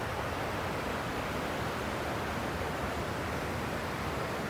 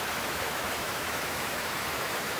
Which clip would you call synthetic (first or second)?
second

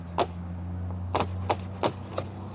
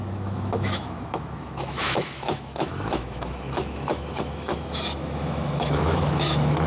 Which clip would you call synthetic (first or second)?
second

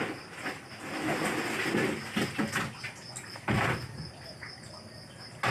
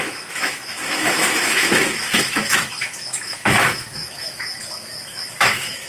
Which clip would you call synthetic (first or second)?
second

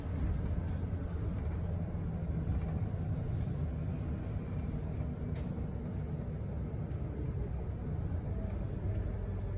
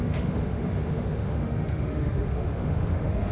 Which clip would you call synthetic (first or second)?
second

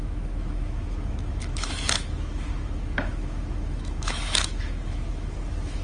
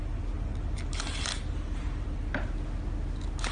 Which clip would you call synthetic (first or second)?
first